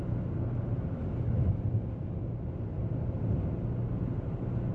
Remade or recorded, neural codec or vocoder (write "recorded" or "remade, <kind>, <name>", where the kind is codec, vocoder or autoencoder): recorded